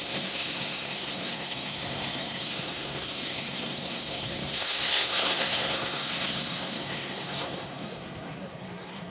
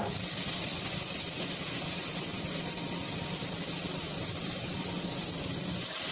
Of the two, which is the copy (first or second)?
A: first